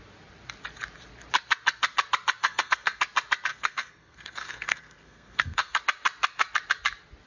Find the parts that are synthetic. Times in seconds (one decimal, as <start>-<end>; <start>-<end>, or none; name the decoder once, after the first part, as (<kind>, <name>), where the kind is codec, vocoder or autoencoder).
2.4-3.0 (codec, SNAC); 3.5-5.8